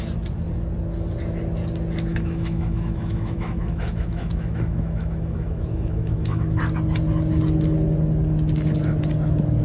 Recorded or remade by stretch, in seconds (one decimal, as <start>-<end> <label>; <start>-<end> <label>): 0.0-2.1 recorded; 2.1-6.6 remade; 6.6-9.6 recorded